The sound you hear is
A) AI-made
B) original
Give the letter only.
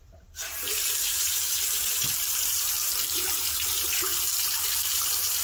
A